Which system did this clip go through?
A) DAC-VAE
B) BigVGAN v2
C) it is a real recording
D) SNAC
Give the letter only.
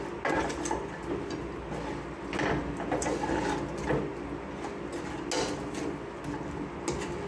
C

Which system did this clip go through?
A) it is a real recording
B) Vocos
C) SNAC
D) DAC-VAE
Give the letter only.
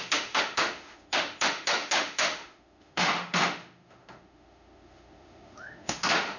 D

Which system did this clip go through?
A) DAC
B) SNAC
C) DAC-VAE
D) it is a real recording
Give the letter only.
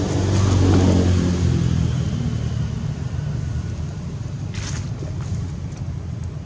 D